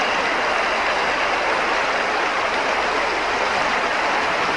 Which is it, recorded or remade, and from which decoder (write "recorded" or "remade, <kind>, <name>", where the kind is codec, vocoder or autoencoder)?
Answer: recorded